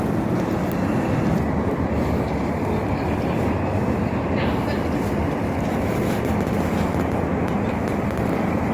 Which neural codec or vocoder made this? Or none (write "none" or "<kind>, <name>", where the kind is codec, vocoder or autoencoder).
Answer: none